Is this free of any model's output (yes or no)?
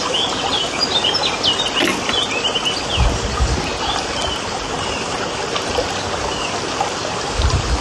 yes